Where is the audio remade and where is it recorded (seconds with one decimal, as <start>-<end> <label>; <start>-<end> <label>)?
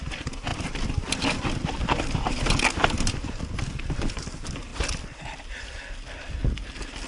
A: 0.0-4.7 remade; 4.7-5.4 recorded; 5.4-6.4 remade; 6.4-7.1 recorded